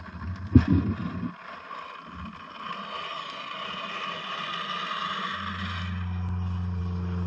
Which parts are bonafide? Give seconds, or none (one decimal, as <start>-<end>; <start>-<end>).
0.0-7.3